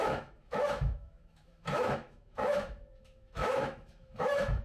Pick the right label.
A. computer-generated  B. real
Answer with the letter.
A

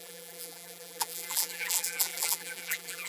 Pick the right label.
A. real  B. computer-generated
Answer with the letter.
B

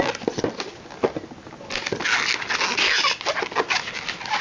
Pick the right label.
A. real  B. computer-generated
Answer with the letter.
A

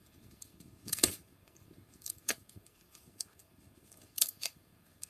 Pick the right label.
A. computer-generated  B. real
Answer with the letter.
A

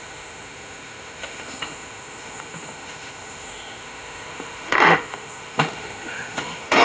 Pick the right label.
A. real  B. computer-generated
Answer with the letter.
B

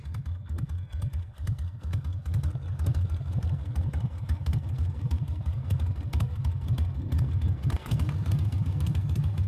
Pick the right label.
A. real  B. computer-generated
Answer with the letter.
B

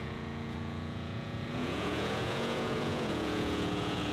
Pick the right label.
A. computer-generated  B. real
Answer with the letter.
A